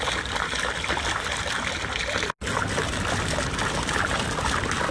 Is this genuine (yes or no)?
yes